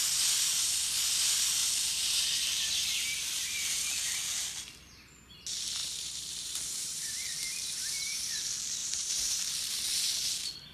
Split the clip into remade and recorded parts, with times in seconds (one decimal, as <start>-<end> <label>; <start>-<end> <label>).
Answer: 0.0-1.6 recorded; 1.6-3.9 remade; 3.9-5.8 recorded; 5.8-8.3 remade; 8.3-8.8 recorded; 8.8-9.5 remade; 9.5-10.7 recorded